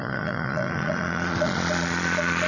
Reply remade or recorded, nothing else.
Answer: remade